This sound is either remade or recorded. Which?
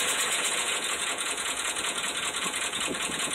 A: remade